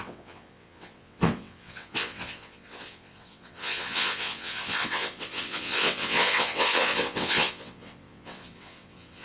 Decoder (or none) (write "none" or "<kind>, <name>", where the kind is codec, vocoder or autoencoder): vocoder, WaveNeXt